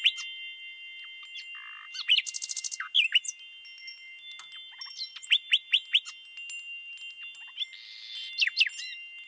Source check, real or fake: real